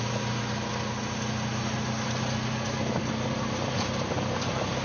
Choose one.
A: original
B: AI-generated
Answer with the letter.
A